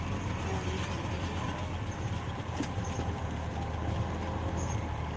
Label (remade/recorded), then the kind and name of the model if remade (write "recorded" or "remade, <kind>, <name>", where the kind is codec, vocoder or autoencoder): recorded